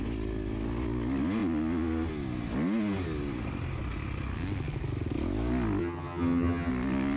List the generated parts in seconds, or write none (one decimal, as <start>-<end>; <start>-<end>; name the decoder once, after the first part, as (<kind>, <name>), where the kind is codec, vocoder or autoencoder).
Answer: 5.8-6.7 (vocoder, HiFi-GAN)